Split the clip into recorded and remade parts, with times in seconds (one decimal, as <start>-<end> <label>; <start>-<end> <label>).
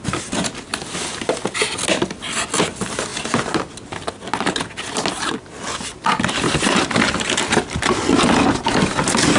0.0-9.4 recorded